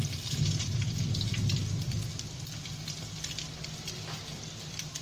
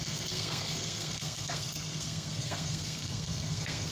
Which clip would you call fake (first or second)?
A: second